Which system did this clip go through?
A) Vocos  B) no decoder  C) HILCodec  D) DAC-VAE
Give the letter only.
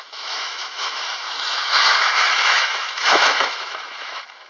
D